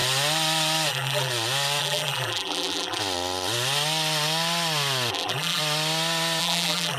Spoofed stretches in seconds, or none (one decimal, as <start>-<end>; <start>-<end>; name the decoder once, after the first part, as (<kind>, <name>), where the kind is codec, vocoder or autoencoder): 0.9-1.3 (vocoder, BigVGAN v2); 1.8-3.0; 5.1-5.6; 6.4-7.0